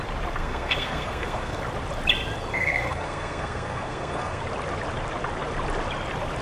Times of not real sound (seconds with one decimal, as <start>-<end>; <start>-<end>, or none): 0.4-1.6; 2.5-4.4